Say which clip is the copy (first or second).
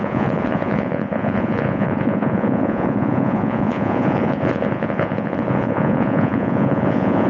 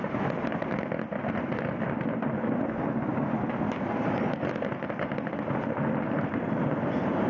first